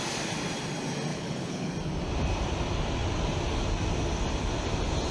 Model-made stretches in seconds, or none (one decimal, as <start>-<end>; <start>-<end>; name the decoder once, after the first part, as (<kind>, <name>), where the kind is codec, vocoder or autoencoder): 1.1-1.7 (codec, HILCodec)